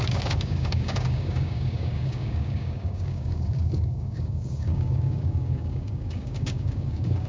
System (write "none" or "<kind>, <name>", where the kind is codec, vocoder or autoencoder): codec, DAC